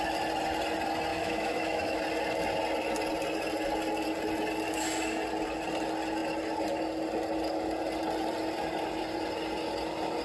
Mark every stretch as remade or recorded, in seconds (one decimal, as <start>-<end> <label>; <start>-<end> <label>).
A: 0.0-1.1 recorded; 1.1-2.0 remade; 2.0-10.2 recorded